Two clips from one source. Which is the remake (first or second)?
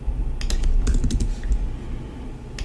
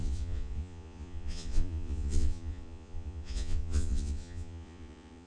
second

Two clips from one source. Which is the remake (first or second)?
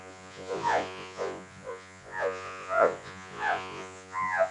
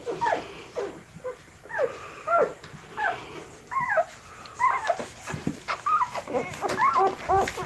first